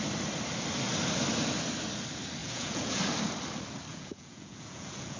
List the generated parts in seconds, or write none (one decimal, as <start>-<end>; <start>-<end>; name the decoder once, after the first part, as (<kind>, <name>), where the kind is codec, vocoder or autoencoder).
2.4-3.0 (vocoder, Vocos); 3.9-5.2